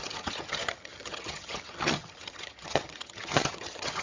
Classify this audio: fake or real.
fake